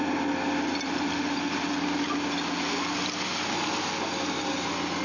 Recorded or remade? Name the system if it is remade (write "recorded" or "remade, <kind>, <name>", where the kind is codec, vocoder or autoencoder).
recorded